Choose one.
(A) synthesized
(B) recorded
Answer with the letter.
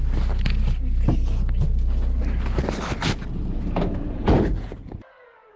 B